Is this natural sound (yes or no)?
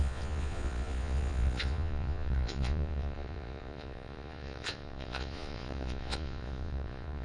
no